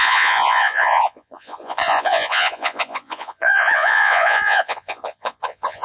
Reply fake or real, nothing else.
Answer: fake